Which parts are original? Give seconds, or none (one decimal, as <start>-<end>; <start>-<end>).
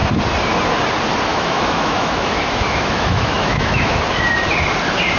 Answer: 0.0-1.3; 4.0-5.2